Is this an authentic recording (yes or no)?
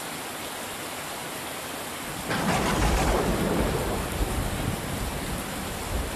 no